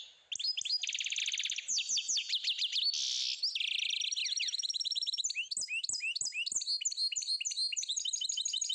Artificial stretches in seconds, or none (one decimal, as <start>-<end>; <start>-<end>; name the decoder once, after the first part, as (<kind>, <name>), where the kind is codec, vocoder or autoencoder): none

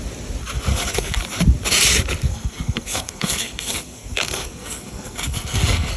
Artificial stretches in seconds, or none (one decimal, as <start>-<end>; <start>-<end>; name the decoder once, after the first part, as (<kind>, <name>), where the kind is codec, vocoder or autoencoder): 0.7-1.2 (codec, SNAC); 2.3-6.0

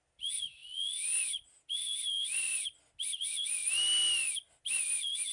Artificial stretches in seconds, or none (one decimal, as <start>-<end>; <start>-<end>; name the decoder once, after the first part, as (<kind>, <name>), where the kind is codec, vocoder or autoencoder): none

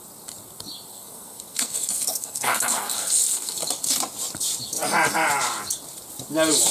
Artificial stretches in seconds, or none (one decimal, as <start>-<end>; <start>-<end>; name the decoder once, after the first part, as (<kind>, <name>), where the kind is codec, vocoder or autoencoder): 0.9-3.7 (codec, SNAC)

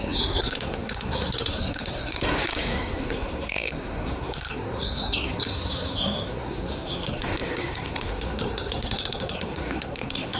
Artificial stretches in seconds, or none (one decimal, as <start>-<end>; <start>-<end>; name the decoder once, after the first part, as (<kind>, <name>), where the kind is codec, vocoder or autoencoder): 0.0-10.4 (codec, SNAC)

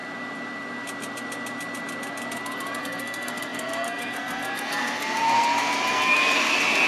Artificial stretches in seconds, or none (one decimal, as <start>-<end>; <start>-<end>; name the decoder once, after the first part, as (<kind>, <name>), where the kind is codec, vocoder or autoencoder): 2.8-6.9 (codec, SNAC)

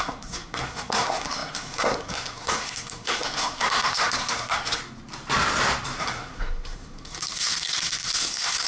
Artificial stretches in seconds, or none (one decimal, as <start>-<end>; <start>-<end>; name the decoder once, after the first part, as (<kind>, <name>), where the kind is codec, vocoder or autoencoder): 0.0-4.8 (codec, SNAC); 6.0-8.7

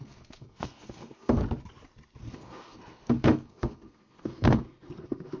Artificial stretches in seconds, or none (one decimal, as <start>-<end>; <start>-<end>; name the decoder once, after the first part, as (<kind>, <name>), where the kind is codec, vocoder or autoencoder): 0.0-1.4 (codec, SNAC); 2.2-5.4